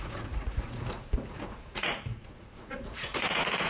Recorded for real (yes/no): no